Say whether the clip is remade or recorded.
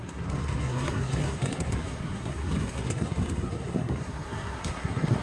remade